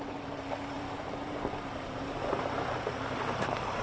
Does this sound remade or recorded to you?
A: remade